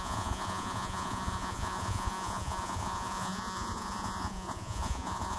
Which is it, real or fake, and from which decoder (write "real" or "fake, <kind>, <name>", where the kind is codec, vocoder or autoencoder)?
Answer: fake, vocoder, Vocos